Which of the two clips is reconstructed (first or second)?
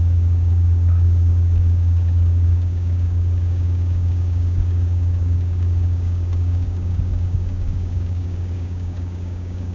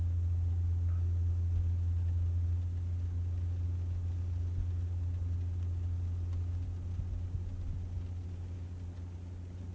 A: first